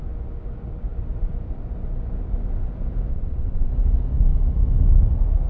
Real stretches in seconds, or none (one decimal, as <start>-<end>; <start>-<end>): 0.0-3.1; 3.7-5.5